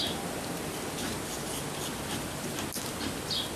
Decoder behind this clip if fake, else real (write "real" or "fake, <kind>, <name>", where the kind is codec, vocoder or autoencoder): real